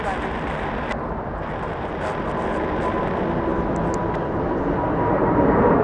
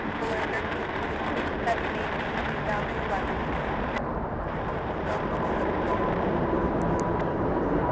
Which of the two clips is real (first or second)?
first